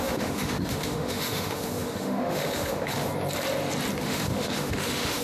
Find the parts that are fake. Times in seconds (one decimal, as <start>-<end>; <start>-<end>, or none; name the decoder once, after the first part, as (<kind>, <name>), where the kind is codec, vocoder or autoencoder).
0.0-3.1 (autoencoder, DAC-VAE); 4.0-5.2